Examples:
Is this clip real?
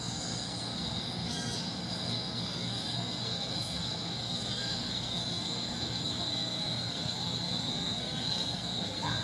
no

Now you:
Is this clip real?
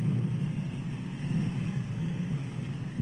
no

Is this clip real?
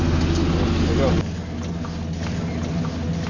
yes